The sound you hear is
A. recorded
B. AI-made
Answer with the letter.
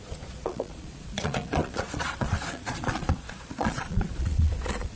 B